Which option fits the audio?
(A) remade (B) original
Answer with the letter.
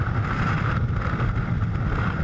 B